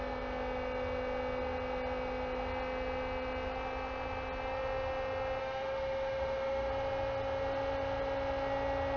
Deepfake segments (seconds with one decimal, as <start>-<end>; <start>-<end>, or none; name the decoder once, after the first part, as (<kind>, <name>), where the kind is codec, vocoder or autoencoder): 5.4-6.7 (autoencoder, DAC-VAE)